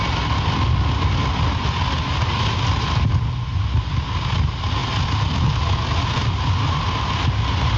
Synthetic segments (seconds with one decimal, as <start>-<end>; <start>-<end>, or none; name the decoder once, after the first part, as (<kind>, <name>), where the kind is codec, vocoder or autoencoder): none